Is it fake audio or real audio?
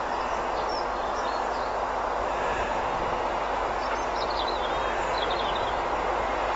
real